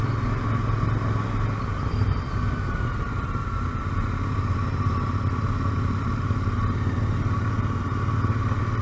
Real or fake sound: real